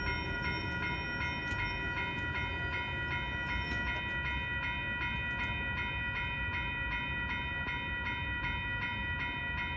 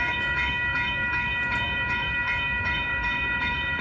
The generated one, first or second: second